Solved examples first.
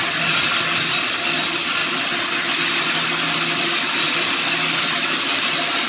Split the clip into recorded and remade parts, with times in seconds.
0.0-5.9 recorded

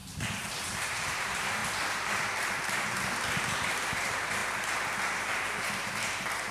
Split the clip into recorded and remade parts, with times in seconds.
0.0-1.6 remade; 1.6-3.1 recorded; 3.1-4.4 remade; 4.4-5.2 recorded; 5.2-6.5 remade

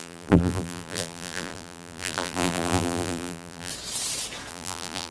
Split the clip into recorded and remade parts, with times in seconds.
0.0-3.7 remade; 3.7-4.5 recorded; 4.5-5.1 remade

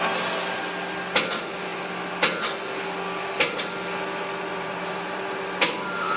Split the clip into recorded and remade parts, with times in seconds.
0.0-4.5 recorded; 4.5-6.2 remade